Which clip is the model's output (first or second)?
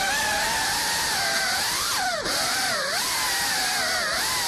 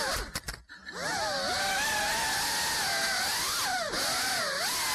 first